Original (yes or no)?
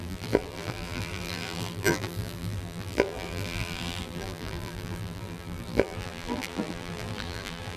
no